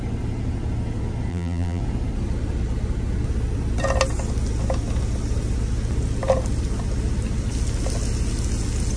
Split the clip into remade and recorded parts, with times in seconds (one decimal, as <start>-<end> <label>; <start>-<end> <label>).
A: 0.0-1.3 recorded; 1.3-1.8 remade; 1.8-9.0 recorded